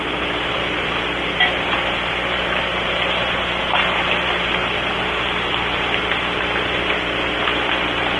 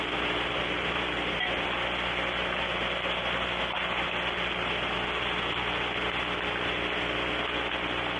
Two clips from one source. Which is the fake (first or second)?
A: first